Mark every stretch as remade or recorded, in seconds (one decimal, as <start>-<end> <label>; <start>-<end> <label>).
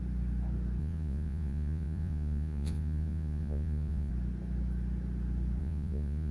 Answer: 0.0-0.8 recorded; 0.8-4.1 remade; 4.1-5.6 recorded; 5.6-6.3 remade